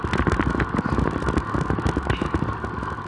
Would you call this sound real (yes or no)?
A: yes